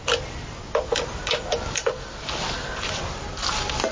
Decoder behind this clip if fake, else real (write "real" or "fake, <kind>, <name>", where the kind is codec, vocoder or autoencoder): real